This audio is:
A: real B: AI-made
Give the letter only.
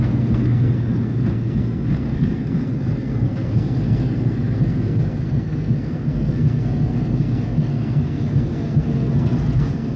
B